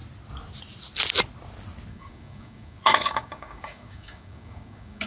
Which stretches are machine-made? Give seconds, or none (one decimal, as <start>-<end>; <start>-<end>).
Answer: 1.9-5.1